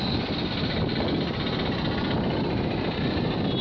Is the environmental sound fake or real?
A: real